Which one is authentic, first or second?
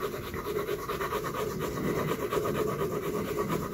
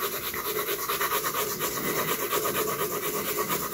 second